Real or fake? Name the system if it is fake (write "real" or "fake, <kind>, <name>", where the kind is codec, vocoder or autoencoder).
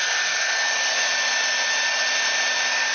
real